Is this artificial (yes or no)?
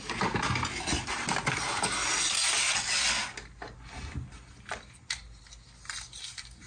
no